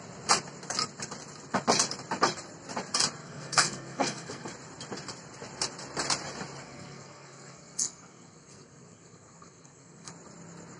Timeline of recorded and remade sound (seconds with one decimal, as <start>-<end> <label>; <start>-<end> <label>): 0.0-3.2 recorded; 3.2-4.5 remade; 4.5-6.6 recorded; 6.6-10.1 remade; 10.1-10.8 recorded